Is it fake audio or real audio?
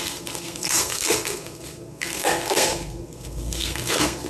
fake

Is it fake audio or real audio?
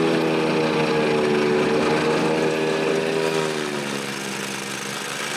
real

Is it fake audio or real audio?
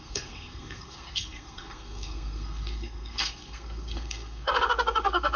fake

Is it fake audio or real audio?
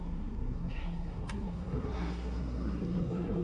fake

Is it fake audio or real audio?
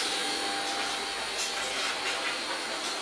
real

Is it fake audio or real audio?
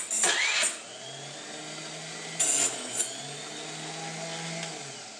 real